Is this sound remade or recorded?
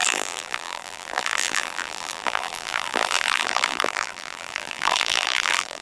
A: remade